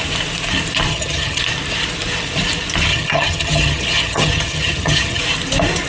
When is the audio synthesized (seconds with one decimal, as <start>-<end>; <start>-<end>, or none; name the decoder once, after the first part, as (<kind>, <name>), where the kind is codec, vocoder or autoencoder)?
0.9-1.4 (vocoder, HiFi-GAN); 2.9-5.2